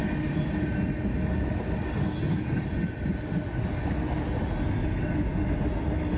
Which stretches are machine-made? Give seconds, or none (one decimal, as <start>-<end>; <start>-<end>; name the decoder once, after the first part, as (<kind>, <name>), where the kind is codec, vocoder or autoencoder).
none